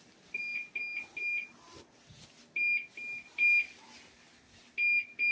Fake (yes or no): no